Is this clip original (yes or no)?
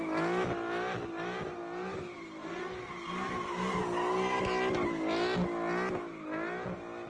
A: yes